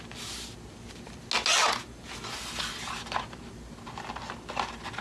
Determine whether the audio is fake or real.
real